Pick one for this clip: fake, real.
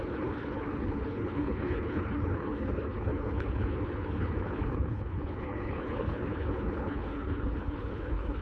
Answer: fake